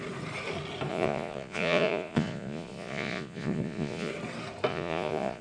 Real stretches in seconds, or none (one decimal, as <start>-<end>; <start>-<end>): 0.0-0.9; 4.1-4.7